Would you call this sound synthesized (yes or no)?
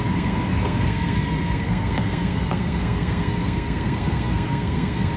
yes